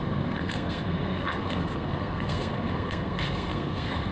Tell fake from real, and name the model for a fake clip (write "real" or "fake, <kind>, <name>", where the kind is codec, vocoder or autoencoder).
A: fake, codec, SNAC